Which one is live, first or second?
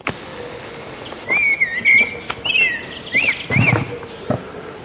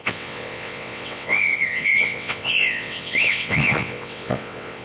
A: first